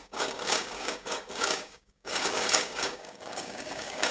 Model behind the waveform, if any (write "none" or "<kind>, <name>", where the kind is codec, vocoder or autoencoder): codec, DAC